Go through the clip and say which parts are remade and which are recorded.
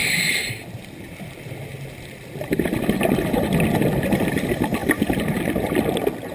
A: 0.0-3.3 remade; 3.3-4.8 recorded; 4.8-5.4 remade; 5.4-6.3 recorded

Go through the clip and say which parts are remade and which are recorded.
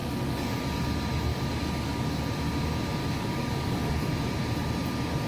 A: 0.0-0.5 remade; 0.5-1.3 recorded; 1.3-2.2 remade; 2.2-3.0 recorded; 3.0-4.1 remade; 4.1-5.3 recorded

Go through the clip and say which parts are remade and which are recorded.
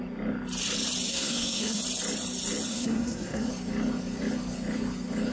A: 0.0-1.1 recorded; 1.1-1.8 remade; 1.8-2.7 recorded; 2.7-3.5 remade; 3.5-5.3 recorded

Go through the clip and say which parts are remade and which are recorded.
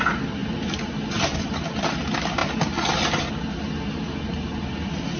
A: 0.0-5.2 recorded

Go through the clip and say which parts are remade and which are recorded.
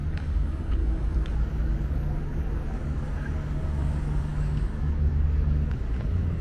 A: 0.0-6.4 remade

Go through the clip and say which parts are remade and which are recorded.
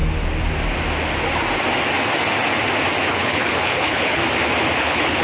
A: 0.0-3.1 recorded; 3.1-4.2 remade; 4.2-4.8 recorded; 4.8-5.2 remade